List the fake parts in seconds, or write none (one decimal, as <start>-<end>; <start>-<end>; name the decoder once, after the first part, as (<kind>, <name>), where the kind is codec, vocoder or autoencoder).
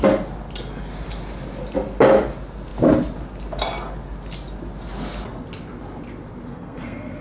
6.5-7.2 (codec, SNAC)